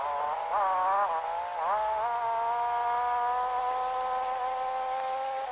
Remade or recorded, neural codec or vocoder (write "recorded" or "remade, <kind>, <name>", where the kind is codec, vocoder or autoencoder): recorded